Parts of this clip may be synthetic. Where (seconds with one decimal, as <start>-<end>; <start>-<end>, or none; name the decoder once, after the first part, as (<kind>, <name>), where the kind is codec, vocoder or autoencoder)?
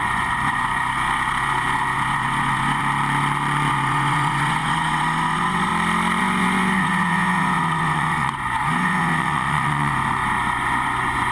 0.0-2.8 (vocoder, Vocos); 3.7-5.7; 6.2-11.3